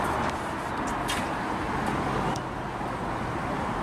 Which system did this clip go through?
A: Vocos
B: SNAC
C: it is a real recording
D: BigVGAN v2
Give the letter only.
C